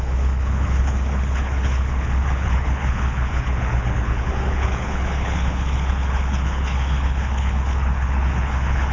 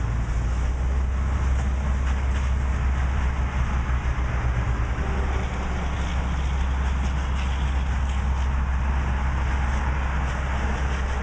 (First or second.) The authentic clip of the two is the second